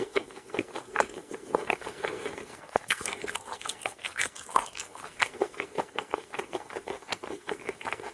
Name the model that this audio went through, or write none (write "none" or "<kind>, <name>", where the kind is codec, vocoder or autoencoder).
codec, SNAC